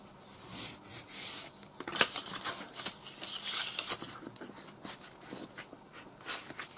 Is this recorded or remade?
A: recorded